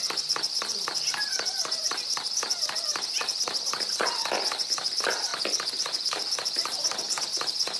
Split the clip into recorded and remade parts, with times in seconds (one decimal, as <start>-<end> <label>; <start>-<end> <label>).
0.0-7.8 recorded